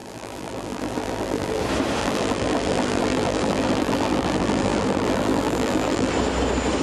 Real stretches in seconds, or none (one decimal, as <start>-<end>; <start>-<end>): 1.6-2.0; 6.1-6.8